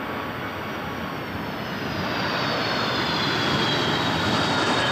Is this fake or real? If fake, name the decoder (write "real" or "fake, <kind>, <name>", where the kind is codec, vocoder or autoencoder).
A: real